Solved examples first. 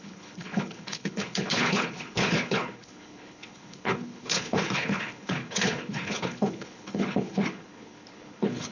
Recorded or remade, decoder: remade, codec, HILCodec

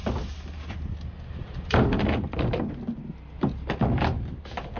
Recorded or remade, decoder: recorded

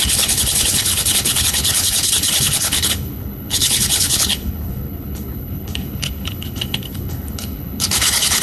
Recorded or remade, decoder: remade, codec, HILCodec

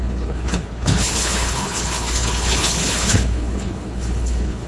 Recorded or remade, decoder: remade, codec, HILCodec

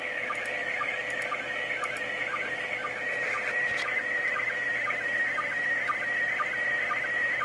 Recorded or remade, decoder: recorded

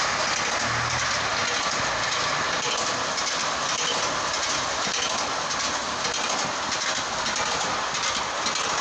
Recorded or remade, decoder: recorded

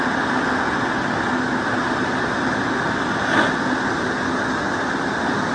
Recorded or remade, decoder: recorded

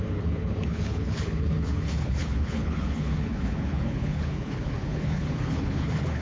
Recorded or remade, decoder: remade, codec, HILCodec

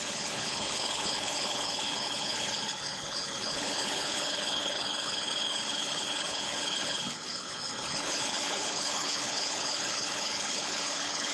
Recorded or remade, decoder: remade, codec, HILCodec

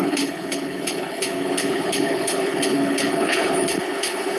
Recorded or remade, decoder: remade, codec, HILCodec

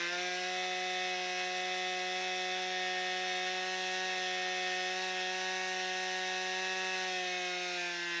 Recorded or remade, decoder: recorded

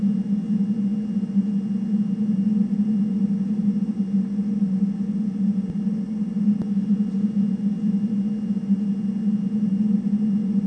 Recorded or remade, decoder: recorded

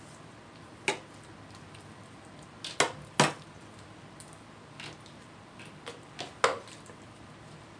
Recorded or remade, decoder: recorded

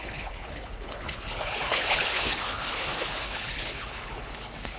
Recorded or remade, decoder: remade, codec, HILCodec